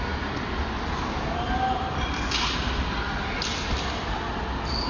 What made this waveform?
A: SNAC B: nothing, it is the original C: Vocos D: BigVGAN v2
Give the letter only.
B